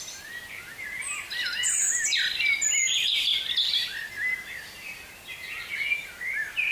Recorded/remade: recorded